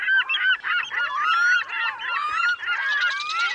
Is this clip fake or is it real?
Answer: real